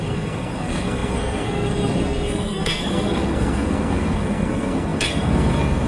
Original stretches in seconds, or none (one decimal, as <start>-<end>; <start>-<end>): none